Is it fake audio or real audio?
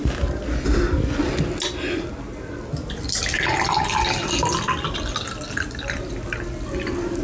real